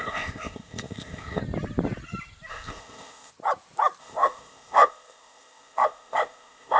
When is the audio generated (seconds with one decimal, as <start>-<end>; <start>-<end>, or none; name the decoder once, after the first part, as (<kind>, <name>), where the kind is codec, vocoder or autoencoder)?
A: 0.0-1.4 (codec, ZipCodec); 2.5-3.3; 4.0-6.8